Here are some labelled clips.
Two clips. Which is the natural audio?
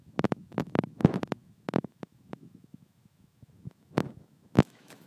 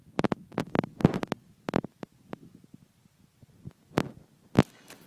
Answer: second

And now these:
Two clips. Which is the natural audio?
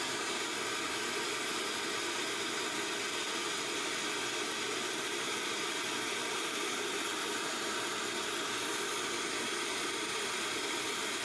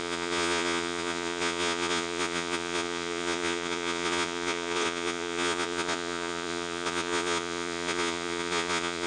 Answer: first